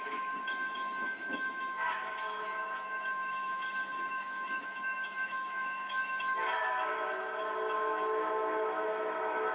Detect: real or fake fake